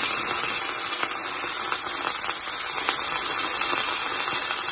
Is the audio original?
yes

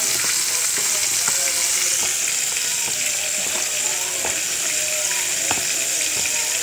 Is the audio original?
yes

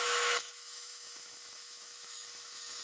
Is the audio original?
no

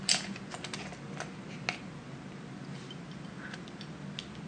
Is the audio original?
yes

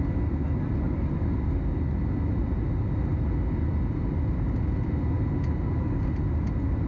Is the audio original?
yes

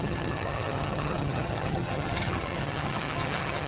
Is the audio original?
no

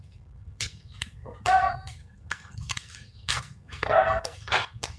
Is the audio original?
no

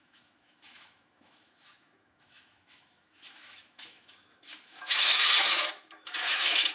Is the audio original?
no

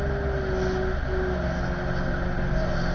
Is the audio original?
yes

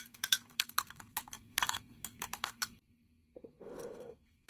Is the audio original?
no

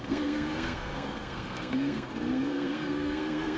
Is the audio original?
no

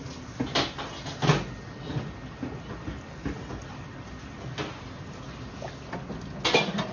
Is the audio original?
yes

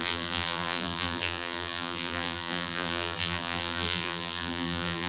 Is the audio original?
no